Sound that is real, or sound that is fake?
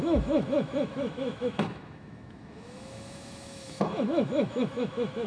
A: fake